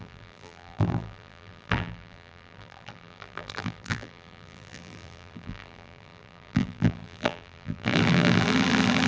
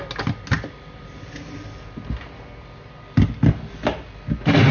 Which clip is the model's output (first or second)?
first